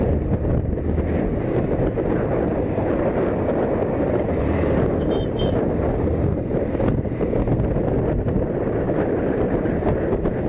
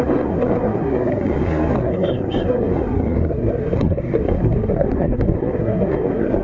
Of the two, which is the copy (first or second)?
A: second